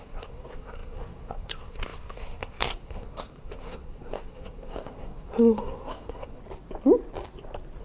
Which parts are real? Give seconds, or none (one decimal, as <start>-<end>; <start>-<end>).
6.4-7.8